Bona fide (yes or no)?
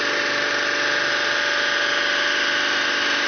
yes